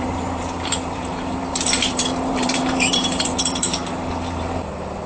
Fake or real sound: fake